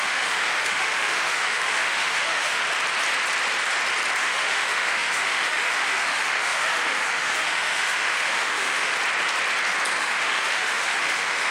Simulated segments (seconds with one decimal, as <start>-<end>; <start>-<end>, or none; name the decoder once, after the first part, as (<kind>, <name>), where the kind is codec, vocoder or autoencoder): 0.0-2.6 (autoencoder, DAC-VAE); 4.2-8.9; 10.0-11.5

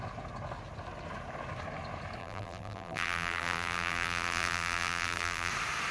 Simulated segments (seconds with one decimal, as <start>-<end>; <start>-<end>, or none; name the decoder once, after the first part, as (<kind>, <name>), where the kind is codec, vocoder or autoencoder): 2.2-5.5 (vocoder, BigVGAN v2)

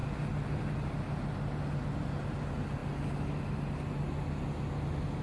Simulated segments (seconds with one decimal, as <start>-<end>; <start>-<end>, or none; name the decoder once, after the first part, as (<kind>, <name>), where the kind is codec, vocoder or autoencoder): none

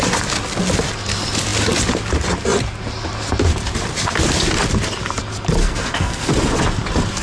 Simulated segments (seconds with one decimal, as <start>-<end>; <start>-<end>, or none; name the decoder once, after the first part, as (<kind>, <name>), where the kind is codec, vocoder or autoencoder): 5.6-6.3 (codec, SNAC)